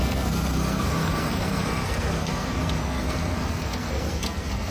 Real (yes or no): no